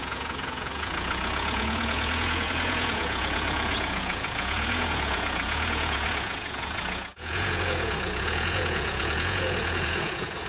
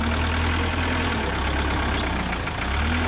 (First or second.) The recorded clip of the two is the second